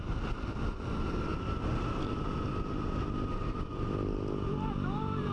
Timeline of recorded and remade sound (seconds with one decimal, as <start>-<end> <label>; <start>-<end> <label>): 0.0-5.3 recorded